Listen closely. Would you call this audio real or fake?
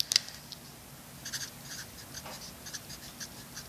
real